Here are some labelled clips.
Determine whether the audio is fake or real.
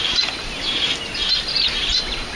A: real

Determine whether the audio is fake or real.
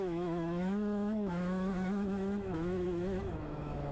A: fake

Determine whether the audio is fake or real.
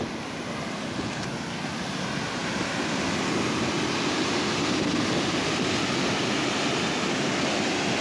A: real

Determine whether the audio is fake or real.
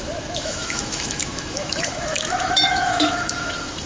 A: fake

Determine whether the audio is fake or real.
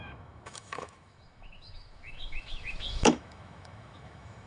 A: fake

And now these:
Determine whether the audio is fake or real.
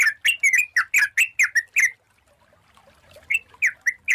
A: real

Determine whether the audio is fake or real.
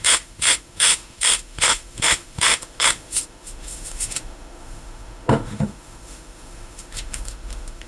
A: fake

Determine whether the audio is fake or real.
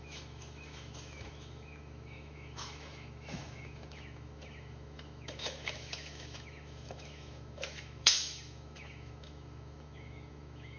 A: fake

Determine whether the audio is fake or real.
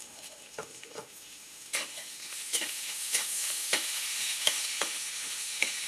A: fake